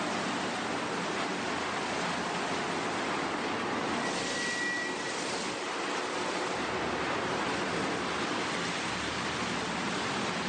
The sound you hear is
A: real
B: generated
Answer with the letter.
A